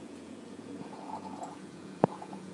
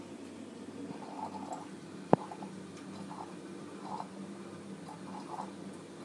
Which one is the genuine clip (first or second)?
second